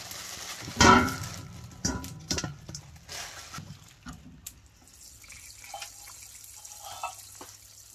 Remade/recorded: recorded